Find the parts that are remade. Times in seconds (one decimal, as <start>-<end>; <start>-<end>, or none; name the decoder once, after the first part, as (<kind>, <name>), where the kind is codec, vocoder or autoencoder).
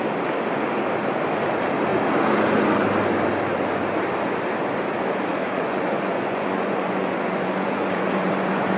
5.4-8.8 (vocoder, Vocos)